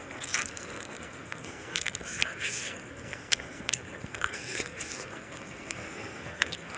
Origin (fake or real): fake